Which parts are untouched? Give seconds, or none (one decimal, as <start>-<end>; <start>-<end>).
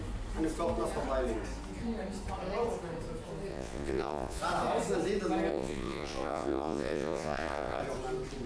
0.0-3.5; 4.4-5.5; 7.8-8.5